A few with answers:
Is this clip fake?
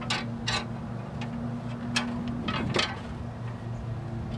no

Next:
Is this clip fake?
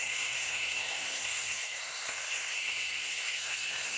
yes